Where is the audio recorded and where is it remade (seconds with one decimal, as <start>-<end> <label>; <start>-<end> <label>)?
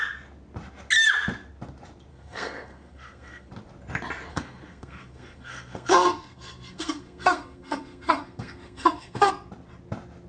0.0-2.1 recorded; 2.1-3.5 remade; 3.5-4.3 recorded; 4.3-9.3 remade; 9.3-10.3 recorded